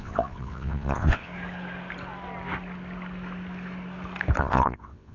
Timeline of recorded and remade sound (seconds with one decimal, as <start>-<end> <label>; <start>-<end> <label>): 0.0-1.3 remade; 1.3-4.4 recorded; 4.4-5.1 remade